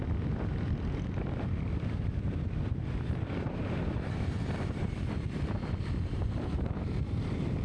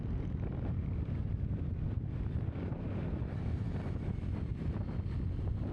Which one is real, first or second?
second